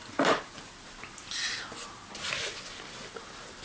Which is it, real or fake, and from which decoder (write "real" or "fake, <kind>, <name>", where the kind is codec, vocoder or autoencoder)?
real